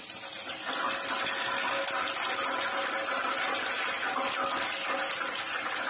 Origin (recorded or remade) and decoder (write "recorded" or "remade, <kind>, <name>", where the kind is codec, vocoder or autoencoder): recorded